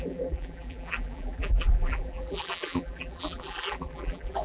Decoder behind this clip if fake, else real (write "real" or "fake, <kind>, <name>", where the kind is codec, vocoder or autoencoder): fake, vocoder, BigVGAN v2